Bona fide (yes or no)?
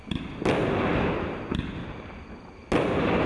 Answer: yes